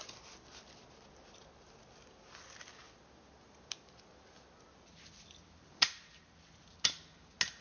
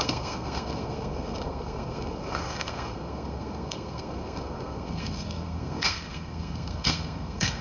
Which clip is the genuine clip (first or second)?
first